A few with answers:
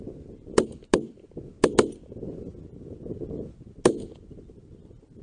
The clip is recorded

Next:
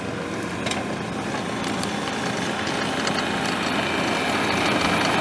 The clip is recorded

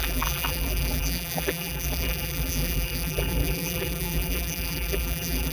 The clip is remade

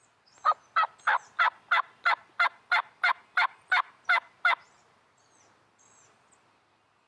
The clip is recorded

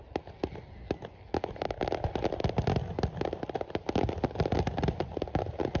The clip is recorded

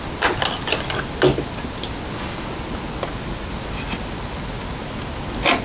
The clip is recorded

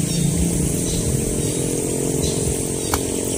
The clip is recorded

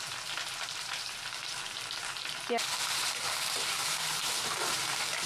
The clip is remade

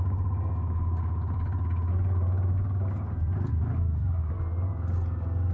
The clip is recorded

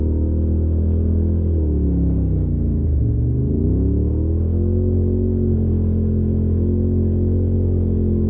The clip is recorded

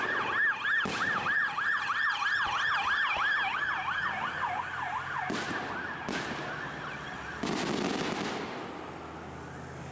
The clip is recorded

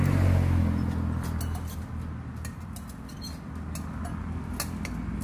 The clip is recorded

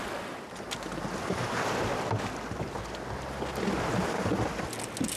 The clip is recorded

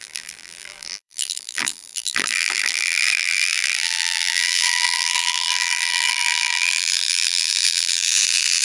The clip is remade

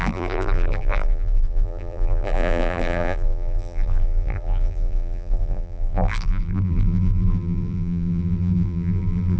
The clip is remade